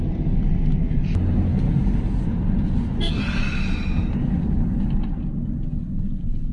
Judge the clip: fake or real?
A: real